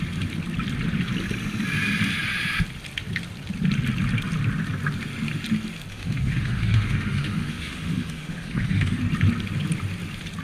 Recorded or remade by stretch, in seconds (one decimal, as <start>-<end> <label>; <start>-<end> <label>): 0.0-5.9 recorded; 5.9-9.0 remade; 9.0-10.4 recorded